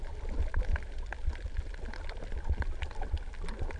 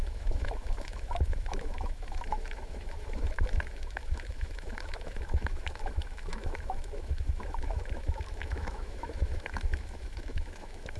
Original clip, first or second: first